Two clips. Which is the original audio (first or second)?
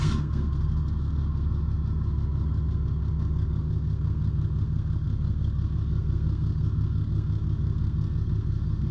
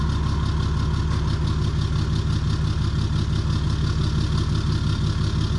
second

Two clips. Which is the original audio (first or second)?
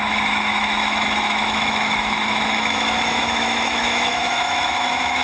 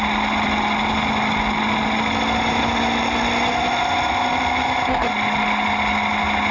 second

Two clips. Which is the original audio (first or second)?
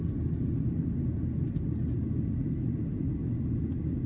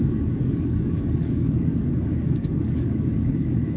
first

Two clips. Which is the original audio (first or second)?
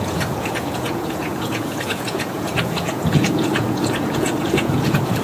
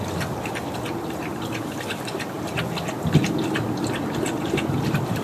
second